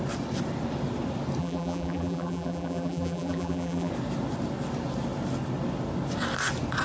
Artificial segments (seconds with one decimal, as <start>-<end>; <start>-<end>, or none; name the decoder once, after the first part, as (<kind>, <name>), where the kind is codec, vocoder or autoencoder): 1.4-3.9 (vocoder, BigVGAN v2)